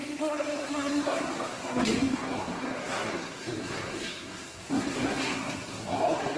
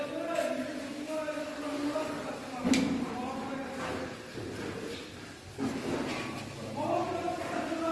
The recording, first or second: second